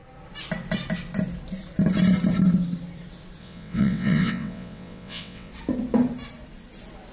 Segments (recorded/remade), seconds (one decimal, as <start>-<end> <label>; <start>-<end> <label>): 0.0-3.4 recorded; 3.4-5.5 remade; 5.5-7.1 recorded